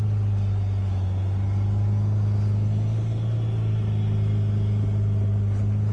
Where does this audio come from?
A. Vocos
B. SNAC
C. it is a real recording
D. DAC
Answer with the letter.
C